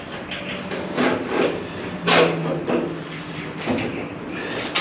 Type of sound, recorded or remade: recorded